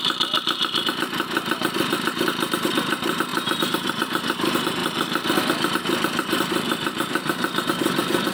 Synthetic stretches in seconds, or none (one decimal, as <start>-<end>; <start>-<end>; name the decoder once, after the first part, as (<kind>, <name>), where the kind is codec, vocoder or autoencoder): 0.0-4.8 (vocoder, BigVGAN v2); 5.7-8.3

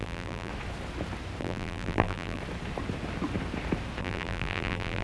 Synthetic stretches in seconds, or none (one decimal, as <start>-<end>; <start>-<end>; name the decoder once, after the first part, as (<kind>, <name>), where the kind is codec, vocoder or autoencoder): 0.0-0.5 (vocoder, BigVGAN v2); 1.4-2.4; 4.0-5.0

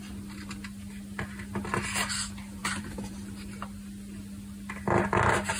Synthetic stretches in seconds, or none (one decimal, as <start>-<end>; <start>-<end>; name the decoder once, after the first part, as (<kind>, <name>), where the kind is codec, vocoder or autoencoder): 2.6-3.1 (vocoder, BigVGAN v2)